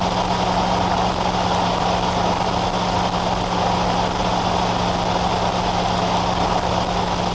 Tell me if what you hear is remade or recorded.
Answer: recorded